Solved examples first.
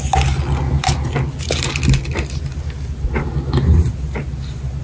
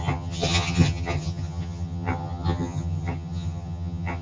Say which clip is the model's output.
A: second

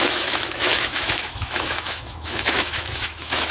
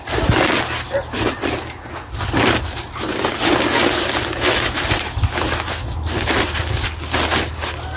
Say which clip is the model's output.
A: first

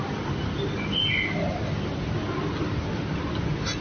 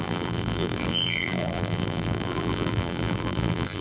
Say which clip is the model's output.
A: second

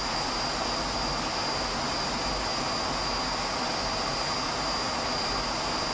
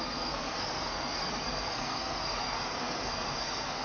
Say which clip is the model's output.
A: second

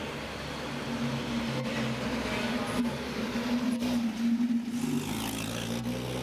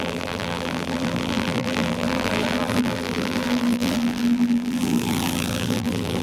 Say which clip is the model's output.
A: second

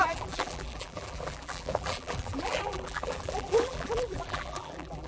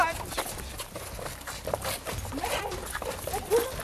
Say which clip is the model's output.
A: first